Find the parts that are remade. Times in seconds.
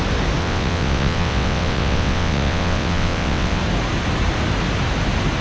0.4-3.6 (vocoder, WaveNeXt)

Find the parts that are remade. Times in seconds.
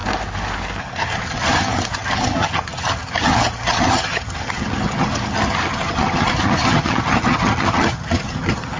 0.8-8.8 (vocoder, HiFi-GAN)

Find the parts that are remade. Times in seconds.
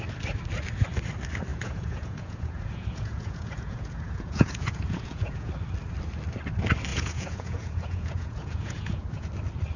1.5-5.5 (vocoder, Vocos); 6.9-9.3